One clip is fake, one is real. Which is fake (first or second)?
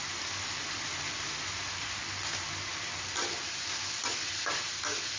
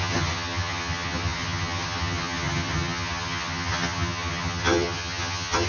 second